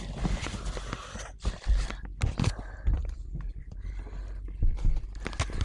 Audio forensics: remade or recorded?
recorded